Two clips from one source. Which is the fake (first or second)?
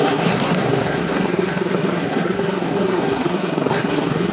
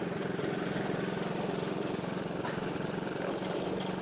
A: first